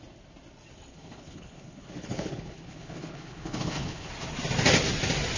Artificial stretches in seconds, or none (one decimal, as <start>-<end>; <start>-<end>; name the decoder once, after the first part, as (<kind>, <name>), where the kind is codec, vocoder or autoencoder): 0.9-4.1 (codec, HILCodec)